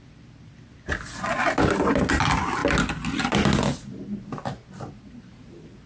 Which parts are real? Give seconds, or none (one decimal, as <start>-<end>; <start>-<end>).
0.0-5.9